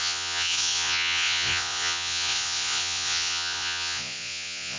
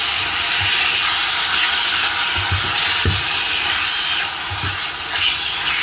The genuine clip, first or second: second